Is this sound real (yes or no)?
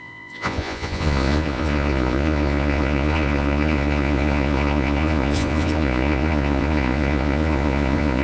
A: no